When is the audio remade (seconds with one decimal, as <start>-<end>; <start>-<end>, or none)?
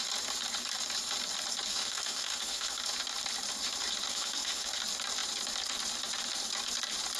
1.7-2.8; 4.1-4.7